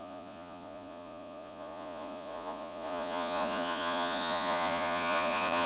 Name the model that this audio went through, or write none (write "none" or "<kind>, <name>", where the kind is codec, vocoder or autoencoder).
vocoder, Vocos